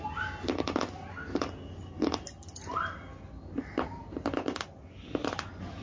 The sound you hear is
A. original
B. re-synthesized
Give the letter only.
A